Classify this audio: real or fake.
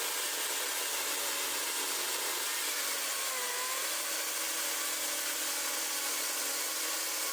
real